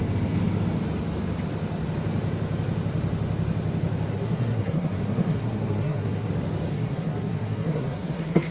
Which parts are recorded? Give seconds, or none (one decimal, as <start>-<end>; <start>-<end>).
0.0-4.1; 6.3-6.7